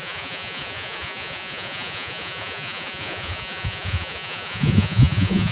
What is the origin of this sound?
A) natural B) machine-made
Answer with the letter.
B